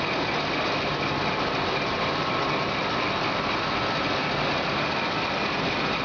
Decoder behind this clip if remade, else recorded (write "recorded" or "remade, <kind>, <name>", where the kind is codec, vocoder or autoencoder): recorded